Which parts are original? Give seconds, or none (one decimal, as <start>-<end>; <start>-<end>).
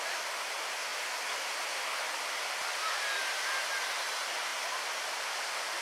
0.0-5.8